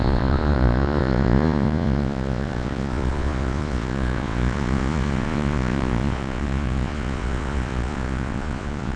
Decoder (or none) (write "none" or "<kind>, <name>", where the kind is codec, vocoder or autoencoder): vocoder, Vocos